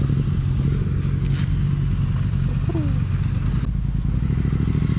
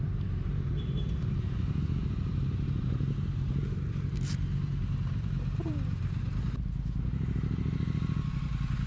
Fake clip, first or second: second